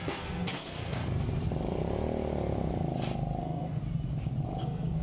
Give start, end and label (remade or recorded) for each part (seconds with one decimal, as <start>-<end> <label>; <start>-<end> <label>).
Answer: 0.0-1.0 remade; 1.0-3.4 recorded; 3.4-3.8 remade; 3.8-4.6 recorded; 4.6-5.0 remade

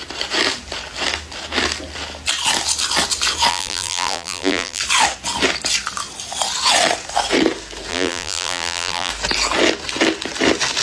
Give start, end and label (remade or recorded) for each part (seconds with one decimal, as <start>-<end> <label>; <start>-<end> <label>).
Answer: 0.0-3.5 recorded; 3.5-4.8 remade; 4.8-7.9 recorded; 7.9-9.1 remade; 9.1-10.8 recorded

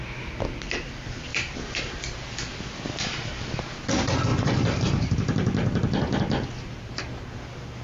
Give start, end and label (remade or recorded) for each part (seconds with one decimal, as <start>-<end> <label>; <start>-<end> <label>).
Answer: 0.0-1.3 recorded; 1.3-1.9 remade; 1.9-4.3 recorded; 4.3-7.0 remade; 7.0-7.8 recorded

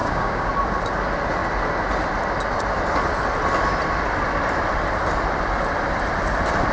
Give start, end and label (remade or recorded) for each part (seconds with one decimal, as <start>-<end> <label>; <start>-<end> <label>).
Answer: 0.0-0.5 remade; 0.5-6.7 recorded

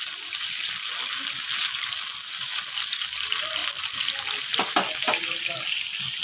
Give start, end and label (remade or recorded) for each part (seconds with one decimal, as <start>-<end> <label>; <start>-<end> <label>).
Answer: 0.0-6.2 recorded

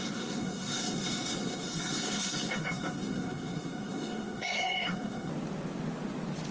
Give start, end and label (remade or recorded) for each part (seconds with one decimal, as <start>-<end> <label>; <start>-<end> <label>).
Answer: 0.0-5.3 remade; 5.3-6.5 recorded

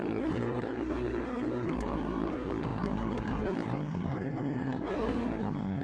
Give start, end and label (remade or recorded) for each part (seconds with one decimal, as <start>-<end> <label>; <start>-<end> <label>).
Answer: 0.0-5.8 remade